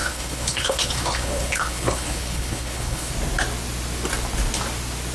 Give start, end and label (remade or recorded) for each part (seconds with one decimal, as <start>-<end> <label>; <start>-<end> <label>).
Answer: 0.0-3.1 remade; 3.1-5.1 recorded